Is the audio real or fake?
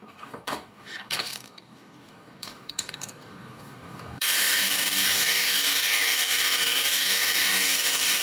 fake